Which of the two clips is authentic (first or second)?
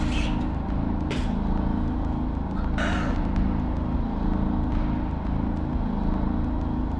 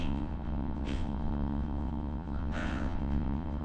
first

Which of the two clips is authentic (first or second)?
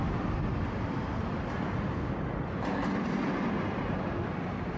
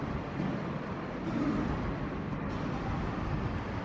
first